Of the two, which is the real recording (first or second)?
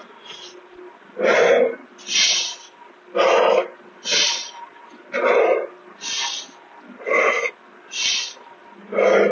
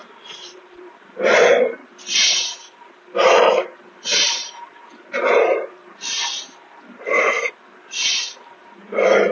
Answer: first